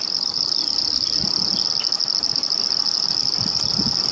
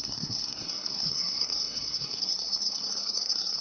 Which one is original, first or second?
first